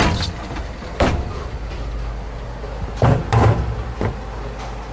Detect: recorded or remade recorded